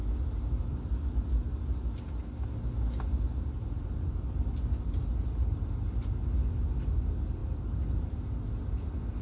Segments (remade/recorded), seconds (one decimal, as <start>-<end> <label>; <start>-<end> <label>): 0.0-3.6 recorded; 3.6-4.2 remade; 4.2-9.2 recorded